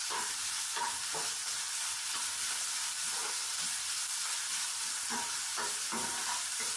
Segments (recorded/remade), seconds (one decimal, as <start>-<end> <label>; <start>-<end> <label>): 0.0-1.1 remade; 1.1-1.8 recorded; 1.8-3.2 remade; 3.2-5.2 recorded; 5.2-6.8 remade